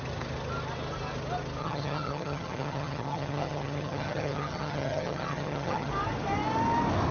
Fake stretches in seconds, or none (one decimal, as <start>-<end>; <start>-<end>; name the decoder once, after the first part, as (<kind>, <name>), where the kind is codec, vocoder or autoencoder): 1.6-5.9 (vocoder, HiFi-GAN)